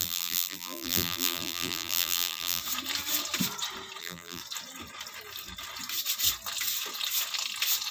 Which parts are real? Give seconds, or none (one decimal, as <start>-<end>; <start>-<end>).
2.6-4.0; 4.4-7.9